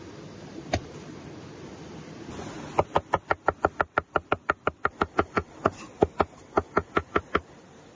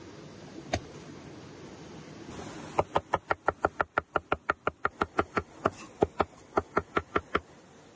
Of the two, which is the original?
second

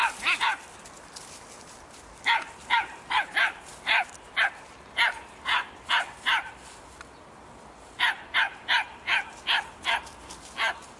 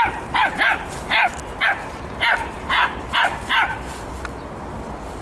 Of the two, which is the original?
second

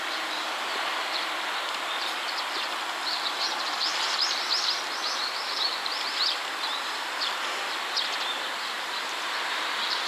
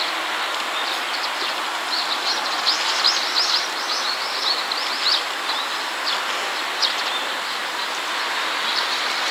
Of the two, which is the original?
second